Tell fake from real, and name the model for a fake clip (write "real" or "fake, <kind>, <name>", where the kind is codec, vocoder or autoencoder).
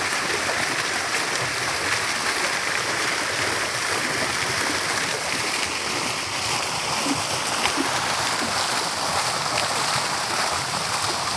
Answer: real